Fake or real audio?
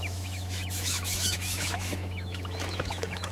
fake